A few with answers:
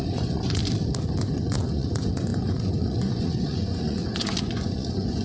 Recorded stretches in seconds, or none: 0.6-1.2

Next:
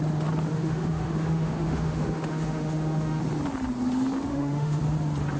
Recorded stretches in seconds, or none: 0.0-0.5; 3.2-4.3; 4.8-5.4

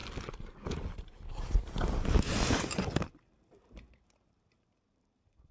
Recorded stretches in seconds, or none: 0.0-3.2

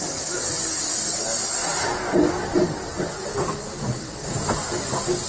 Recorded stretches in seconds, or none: 0.0-5.3